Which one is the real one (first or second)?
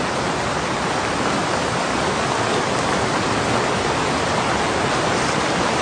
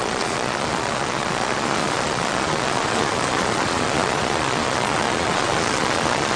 first